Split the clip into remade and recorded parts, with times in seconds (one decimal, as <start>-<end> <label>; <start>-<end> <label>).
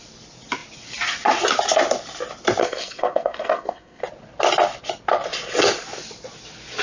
0.0-2.6 recorded; 2.6-4.0 remade; 4.0-6.8 recorded